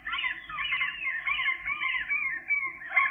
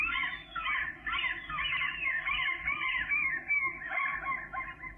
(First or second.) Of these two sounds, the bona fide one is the first